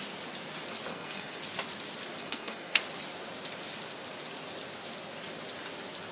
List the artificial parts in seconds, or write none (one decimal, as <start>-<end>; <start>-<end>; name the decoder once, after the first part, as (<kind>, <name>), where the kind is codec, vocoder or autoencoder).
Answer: 0.9-1.4 (codec, SNAC); 2.2-2.8